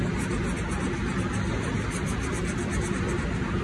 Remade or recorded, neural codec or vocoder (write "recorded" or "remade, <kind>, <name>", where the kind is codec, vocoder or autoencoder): recorded